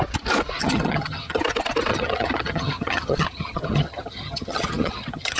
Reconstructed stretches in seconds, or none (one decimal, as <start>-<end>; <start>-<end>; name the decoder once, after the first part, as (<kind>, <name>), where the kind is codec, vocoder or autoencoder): 0.6-1.4 (vocoder, HiFi-GAN); 1.9-5.4